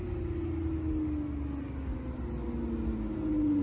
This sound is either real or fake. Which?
real